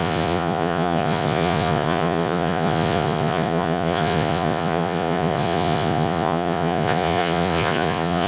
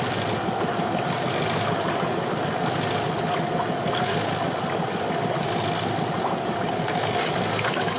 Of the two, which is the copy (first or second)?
first